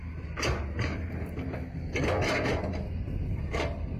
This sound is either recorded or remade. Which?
recorded